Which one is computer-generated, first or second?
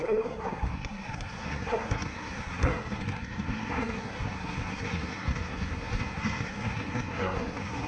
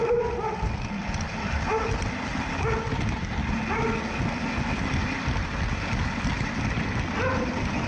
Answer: first